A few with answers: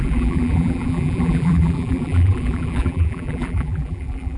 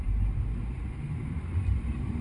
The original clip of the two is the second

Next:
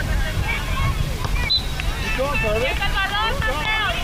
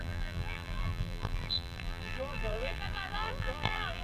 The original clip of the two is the first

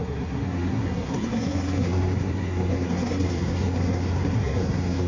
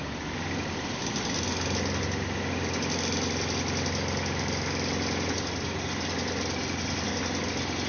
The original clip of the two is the second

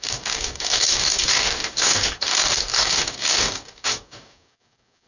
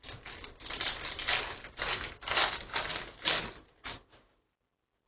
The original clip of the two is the second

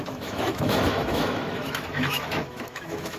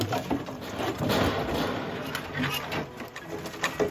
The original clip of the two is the second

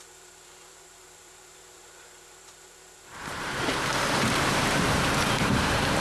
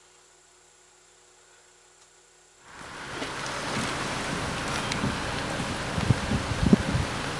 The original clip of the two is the second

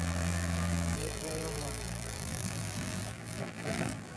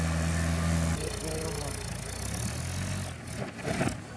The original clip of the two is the second